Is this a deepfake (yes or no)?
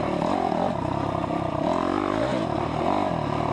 no